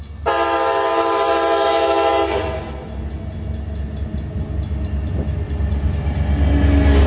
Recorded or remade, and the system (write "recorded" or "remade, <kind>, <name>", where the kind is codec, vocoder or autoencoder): recorded